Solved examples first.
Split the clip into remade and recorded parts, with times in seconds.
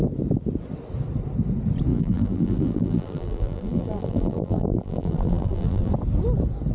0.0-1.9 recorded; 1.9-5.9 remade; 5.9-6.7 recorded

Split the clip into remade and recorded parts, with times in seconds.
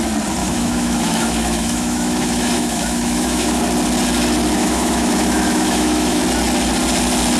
0.0-0.4 recorded; 0.4-3.6 remade; 3.6-4.6 recorded; 4.6-6.2 remade; 6.2-7.4 recorded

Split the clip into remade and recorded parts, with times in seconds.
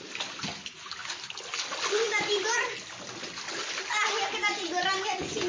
0.0-5.5 recorded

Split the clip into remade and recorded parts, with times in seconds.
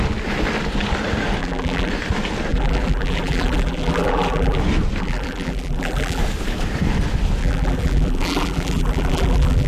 0.0-1.4 recorded; 1.4-1.9 remade; 1.9-2.5 recorded; 2.5-4.6 remade; 4.6-5.0 recorded; 5.0-6.2 remade; 6.2-7.4 recorded; 7.4-9.7 remade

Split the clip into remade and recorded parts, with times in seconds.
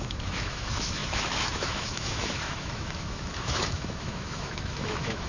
0.0-5.3 remade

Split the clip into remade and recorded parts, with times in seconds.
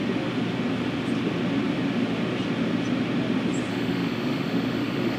0.0-3.7 recorded; 3.7-5.2 remade